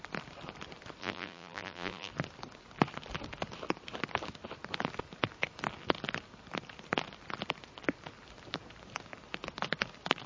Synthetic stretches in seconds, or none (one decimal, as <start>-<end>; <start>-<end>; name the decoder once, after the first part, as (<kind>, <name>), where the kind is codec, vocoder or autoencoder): 1.0-2.1 (vocoder, BigVGAN v2)